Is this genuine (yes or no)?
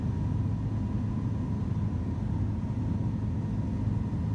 yes